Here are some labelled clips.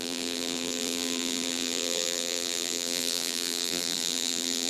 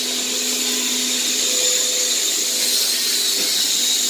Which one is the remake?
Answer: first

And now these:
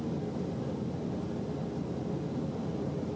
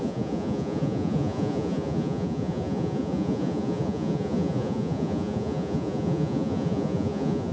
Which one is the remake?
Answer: second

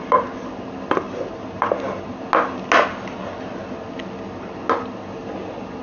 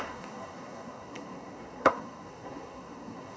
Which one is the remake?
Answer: second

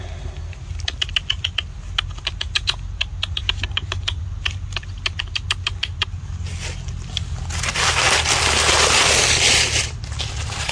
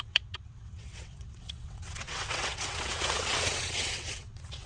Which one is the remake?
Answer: second